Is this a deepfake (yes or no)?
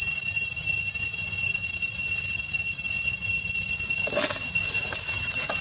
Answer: no